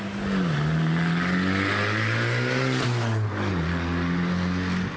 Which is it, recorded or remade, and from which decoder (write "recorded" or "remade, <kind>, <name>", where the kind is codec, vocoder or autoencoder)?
recorded